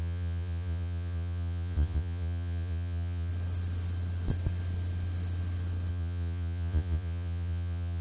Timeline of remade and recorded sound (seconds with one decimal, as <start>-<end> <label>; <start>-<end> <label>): 0.0-3.3 remade; 3.3-5.9 recorded; 5.9-8.0 remade